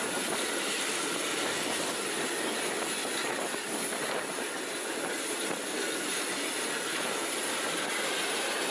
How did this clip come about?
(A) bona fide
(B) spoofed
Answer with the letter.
A